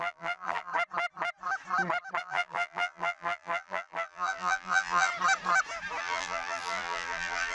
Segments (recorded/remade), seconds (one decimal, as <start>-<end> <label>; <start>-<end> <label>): 0.0-0.7 remade; 0.7-2.2 recorded; 2.2-5.1 remade; 5.1-6.0 recorded; 6.0-7.5 remade